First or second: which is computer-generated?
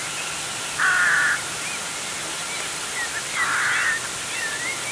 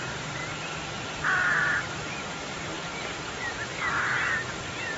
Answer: second